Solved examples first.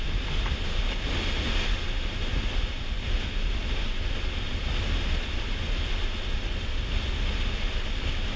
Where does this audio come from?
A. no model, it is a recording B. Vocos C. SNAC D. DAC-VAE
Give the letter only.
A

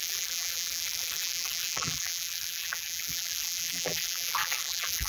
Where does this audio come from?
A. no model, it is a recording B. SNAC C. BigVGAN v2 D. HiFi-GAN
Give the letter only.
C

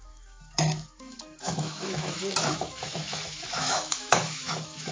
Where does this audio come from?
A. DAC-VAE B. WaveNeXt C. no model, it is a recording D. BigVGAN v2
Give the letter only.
A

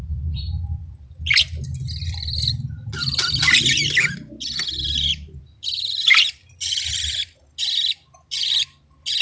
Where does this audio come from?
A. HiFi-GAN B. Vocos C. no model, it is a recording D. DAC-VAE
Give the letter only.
C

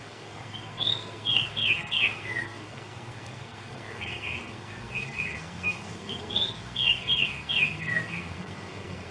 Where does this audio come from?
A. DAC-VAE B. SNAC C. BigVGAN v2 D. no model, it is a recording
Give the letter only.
B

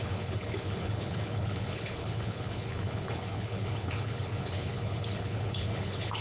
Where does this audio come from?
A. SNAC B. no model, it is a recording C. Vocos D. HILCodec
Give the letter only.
D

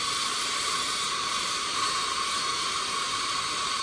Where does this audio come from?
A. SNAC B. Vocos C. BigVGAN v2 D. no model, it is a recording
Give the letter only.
C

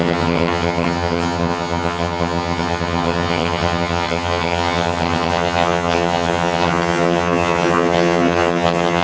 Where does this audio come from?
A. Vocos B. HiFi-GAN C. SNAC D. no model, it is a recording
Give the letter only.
B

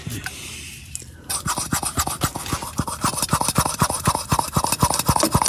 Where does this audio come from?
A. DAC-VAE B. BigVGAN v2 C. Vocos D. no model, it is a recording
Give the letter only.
D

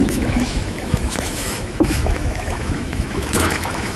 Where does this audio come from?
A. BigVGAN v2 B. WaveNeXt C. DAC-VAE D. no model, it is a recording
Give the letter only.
C